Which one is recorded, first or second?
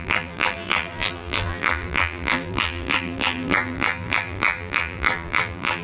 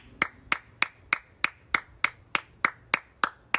second